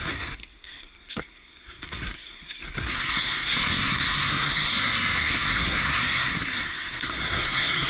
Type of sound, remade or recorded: remade